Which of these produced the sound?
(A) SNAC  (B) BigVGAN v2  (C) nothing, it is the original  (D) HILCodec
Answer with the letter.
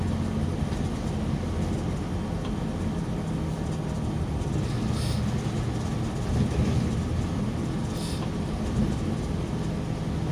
C